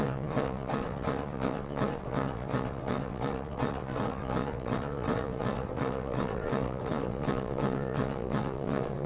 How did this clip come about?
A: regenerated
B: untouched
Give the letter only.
A